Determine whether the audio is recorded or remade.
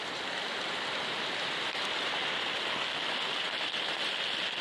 remade